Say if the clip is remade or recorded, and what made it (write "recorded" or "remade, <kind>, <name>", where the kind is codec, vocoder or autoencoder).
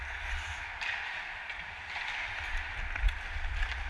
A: recorded